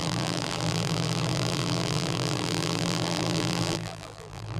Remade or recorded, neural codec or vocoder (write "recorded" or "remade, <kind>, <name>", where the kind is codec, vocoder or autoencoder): remade, vocoder, BigVGAN v2